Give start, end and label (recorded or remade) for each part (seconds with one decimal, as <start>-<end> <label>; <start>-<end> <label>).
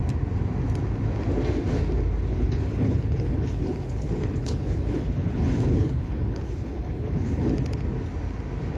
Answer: 0.0-2.3 recorded; 2.3-7.5 remade; 7.5-8.8 recorded